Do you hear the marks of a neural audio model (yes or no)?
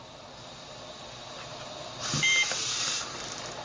yes